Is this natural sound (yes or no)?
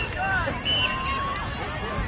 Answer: yes